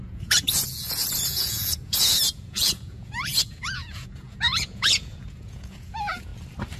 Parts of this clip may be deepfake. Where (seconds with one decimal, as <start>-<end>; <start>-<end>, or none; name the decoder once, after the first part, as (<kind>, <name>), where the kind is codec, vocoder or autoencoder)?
0.0-6.3 (vocoder, Vocos)